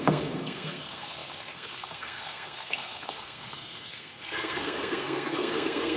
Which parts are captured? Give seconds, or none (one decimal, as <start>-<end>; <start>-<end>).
none